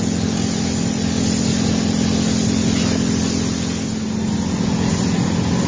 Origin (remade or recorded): recorded